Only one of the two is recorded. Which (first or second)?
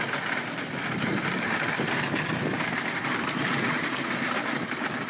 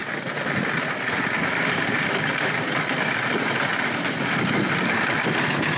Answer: first